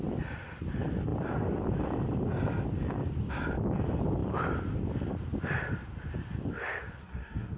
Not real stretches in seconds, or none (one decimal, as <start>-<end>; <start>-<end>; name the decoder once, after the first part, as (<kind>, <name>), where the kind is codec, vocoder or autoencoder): 7.0-7.6 (codec, SNAC)